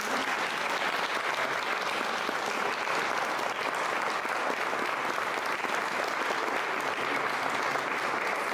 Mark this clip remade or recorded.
recorded